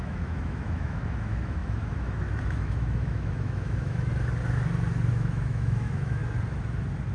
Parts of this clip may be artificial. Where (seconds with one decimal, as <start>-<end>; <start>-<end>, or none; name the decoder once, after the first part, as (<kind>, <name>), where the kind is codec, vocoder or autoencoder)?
0.0-4.1 (autoencoder, DAC-VAE); 5.1-6.2